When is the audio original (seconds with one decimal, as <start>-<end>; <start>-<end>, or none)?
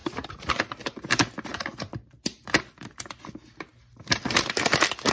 0.7-1.5; 2.1-3.7; 4.4-5.1